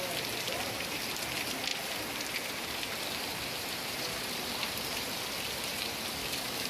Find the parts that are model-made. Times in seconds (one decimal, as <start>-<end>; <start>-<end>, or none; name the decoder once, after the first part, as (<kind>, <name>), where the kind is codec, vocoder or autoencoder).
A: 6.2-6.7 (codec, DAC)

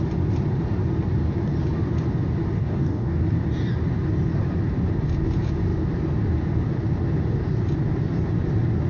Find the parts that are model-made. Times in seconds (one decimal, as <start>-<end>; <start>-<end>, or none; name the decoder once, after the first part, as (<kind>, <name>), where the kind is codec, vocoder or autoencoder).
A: 2.6-3.2 (codec, DAC)

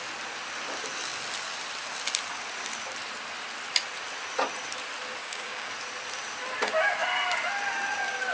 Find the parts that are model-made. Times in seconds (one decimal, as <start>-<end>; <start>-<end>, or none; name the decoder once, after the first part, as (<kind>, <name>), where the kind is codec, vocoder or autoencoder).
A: 5.2-5.7 (codec, DAC)

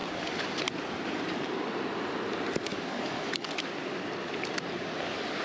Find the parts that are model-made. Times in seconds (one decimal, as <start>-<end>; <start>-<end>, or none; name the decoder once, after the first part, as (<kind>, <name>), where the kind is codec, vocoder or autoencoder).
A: 2.7-3.5 (codec, DAC)

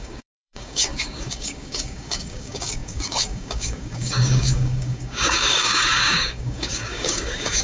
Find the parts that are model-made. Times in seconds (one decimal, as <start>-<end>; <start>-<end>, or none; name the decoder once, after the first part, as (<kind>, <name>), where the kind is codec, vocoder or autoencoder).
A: 0.0-7.6 (codec, DAC)

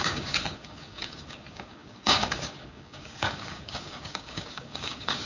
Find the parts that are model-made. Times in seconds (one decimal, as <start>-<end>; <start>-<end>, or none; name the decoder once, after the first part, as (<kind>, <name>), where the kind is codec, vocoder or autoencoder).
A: 0.0-5.3 (codec, DAC)

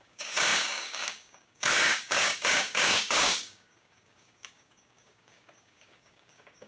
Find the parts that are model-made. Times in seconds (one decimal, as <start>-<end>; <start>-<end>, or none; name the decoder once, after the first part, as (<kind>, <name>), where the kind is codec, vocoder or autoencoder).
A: 0.0-6.7 (codec, DAC)